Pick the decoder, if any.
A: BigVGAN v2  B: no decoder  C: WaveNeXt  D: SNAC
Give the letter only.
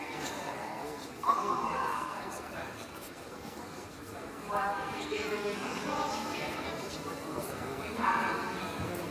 D